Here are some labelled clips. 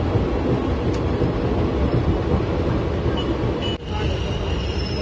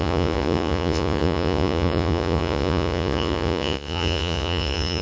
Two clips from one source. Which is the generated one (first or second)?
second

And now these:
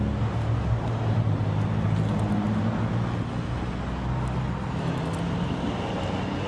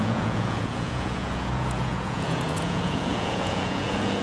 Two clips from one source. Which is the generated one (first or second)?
second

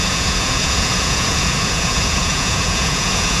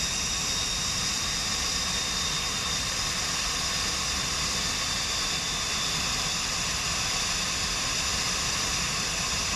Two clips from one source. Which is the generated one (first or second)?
first